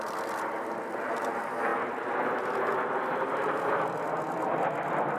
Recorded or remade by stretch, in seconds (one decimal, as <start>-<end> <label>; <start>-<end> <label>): 0.0-5.2 recorded